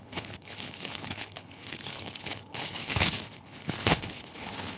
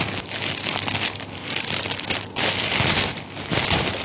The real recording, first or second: second